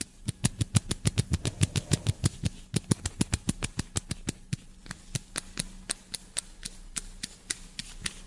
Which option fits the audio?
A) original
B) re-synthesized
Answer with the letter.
A